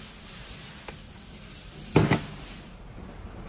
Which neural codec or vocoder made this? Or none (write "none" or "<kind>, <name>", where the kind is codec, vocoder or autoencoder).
none